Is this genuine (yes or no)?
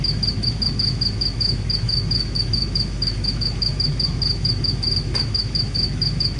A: no